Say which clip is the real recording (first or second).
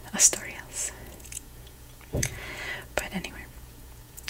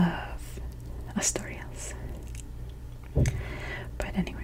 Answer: second